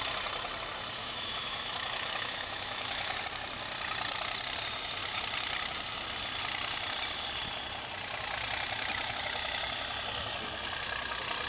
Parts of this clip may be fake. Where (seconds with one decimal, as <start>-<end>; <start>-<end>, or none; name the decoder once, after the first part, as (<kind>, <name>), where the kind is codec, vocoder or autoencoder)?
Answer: 1.0-3.2 (autoencoder, DAC-VAE)